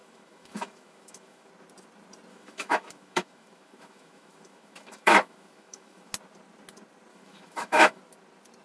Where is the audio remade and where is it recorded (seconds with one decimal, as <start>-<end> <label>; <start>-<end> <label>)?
0.0-1.5 remade; 1.5-2.3 recorded; 2.3-6.1 remade; 6.1-7.1 recorded; 7.1-8.0 remade; 8.0-8.6 recorded